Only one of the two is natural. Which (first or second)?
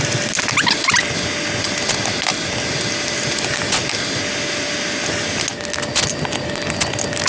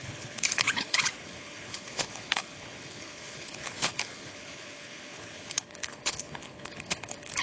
first